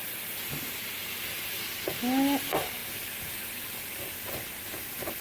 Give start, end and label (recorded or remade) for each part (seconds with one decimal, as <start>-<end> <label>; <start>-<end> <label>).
0.0-5.2 recorded